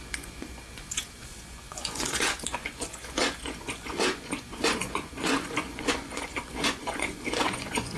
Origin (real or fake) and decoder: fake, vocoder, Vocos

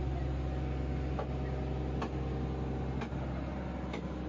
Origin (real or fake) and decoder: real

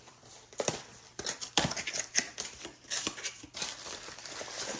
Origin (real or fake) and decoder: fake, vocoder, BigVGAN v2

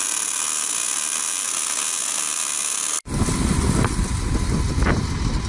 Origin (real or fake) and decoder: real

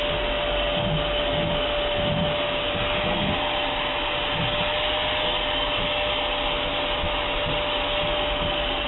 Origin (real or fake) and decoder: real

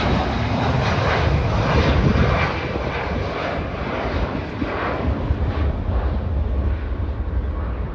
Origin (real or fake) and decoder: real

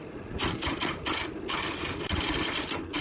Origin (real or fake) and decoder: real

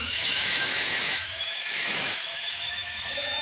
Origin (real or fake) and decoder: fake, autoencoder, DAC-VAE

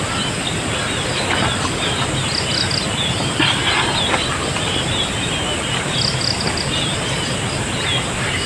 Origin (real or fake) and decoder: real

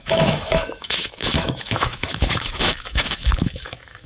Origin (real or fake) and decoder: fake, autoencoder, DAC-VAE